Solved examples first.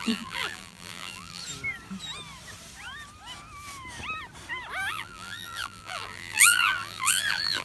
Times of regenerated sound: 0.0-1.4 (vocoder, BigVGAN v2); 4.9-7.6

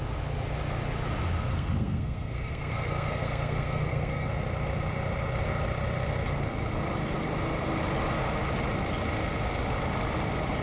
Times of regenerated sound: 1.5-4.3 (codec, SNAC)

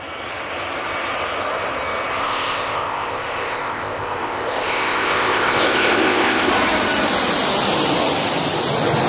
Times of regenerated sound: 2.2-6.5 (codec, ZipCodec)